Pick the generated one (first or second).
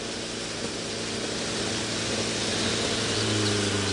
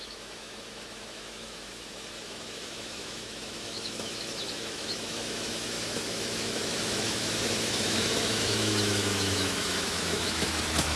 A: second